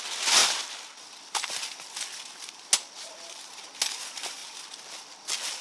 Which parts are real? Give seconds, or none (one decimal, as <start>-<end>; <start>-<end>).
0.0-5.6